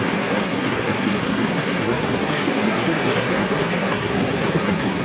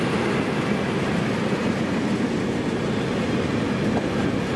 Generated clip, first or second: first